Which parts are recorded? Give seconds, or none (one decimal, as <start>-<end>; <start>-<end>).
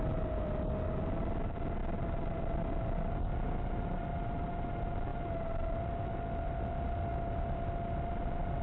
0.0-8.6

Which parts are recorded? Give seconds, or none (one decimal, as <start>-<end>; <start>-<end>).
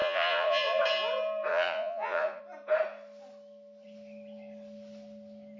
0.8-1.5; 2.4-5.6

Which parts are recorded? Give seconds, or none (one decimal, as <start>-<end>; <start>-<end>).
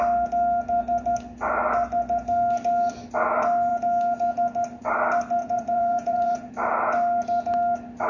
0.0-5.4; 6.5-8.1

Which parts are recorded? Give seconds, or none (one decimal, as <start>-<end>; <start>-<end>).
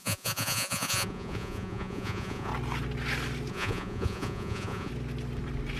2.5-3.5; 4.9-5.8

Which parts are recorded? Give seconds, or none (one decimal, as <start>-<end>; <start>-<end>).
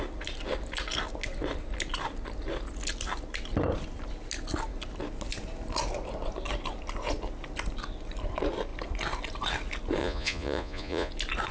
0.0-10.0; 11.1-11.5